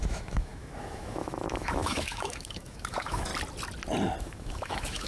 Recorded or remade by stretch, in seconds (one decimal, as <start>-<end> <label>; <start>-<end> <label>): 0.0-3.3 remade; 3.3-4.2 recorded; 4.2-5.1 remade

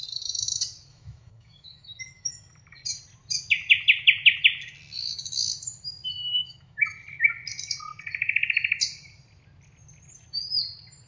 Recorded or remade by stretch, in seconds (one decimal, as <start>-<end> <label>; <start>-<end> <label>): 0.0-0.9 recorded; 0.9-2.5 remade; 2.5-6.3 recorded; 6.3-6.8 remade; 6.8-11.1 recorded

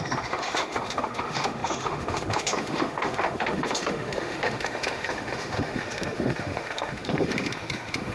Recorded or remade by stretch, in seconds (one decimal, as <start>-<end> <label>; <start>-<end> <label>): 0.0-8.1 remade

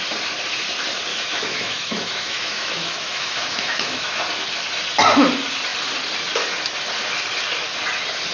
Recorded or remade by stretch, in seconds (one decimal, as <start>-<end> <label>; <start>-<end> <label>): 0.0-1.1 recorded; 1.1-4.2 remade; 4.2-8.3 recorded